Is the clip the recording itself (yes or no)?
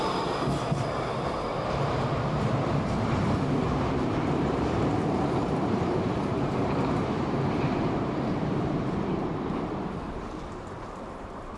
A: no